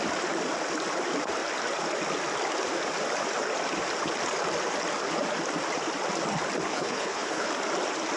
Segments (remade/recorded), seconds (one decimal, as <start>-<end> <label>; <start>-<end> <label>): 0.0-6.7 recorded; 6.7-7.5 remade; 7.5-8.2 recorded